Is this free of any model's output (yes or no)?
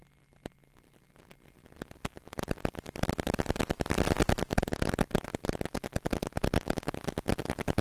no